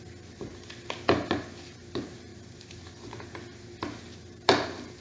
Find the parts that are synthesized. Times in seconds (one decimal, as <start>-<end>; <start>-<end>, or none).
none